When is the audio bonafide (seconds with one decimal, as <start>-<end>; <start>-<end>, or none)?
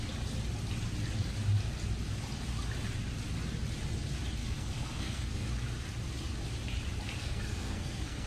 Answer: 0.0-4.4; 5.5-7.2